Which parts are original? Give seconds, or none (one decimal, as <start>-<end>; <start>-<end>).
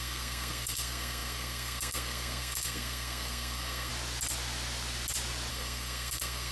3.9-5.5